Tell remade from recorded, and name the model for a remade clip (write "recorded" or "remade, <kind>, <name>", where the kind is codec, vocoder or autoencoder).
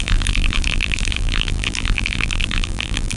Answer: remade, vocoder, BigVGAN v2